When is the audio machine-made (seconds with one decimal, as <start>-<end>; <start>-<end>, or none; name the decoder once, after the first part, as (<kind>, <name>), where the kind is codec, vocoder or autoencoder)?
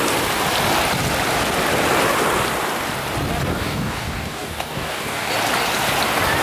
3.5-5.3 (codec, DAC)